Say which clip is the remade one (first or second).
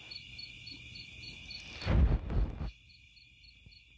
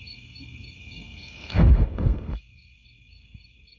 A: second